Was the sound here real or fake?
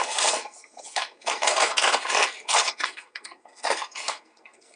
fake